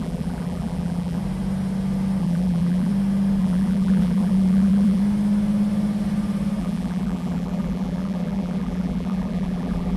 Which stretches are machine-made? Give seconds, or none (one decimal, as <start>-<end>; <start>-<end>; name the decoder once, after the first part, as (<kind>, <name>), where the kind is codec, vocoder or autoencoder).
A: 0.0-1.2 (vocoder, BigVGAN v2); 2.2-2.9; 3.4-5.0; 6.6-10.0